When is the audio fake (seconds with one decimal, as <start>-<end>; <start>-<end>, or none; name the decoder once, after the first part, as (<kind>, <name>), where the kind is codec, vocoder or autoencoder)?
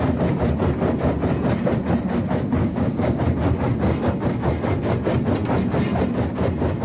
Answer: 2.6-3.2 (codec, DAC)